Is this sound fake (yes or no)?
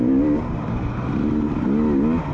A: no